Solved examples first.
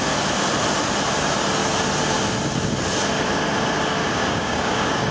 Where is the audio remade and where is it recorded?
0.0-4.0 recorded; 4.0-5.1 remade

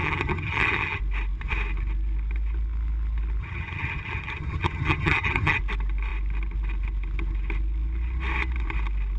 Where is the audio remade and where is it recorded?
0.0-1.0 remade; 1.0-3.4 recorded; 3.4-5.6 remade; 5.6-9.2 recorded

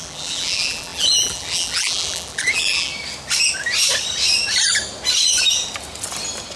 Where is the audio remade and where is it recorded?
0.0-2.9 remade; 2.9-6.6 recorded

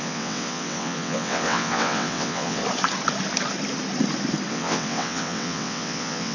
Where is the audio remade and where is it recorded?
0.0-2.6 remade; 2.6-4.5 recorded; 4.5-6.3 remade

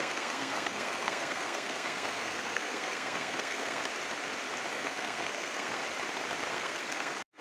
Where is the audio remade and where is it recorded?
0.0-3.8 remade; 3.8-4.7 recorded; 4.7-5.8 remade; 5.8-6.5 recorded; 6.5-7.4 remade